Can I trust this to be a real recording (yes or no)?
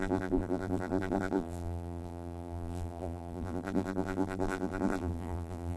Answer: no